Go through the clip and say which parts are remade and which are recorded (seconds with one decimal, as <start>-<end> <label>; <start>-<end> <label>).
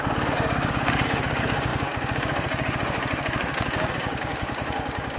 0.0-5.2 remade